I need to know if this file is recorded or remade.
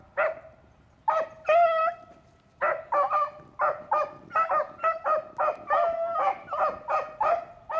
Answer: recorded